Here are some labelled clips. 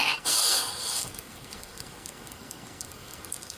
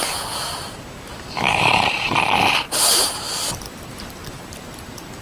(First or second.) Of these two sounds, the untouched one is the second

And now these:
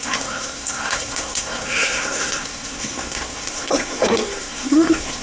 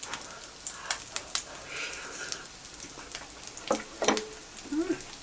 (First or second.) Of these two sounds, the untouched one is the second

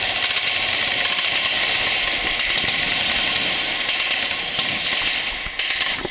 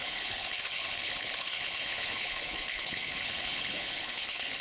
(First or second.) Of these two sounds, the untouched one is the first